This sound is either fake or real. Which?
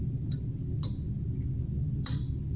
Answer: real